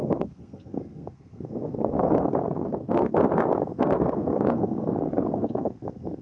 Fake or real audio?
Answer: fake